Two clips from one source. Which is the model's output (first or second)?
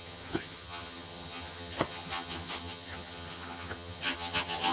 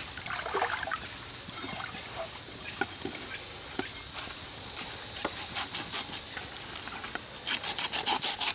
first